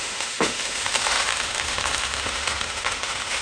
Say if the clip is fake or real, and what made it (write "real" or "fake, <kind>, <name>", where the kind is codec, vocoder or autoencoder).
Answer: fake, autoencoder, DAC-VAE